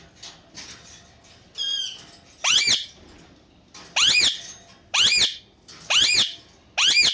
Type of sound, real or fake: real